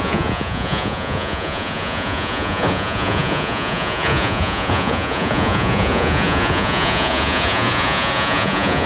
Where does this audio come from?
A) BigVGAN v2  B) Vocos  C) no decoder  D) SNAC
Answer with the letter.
B